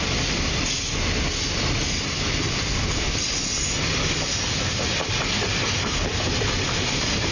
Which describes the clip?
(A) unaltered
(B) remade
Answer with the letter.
A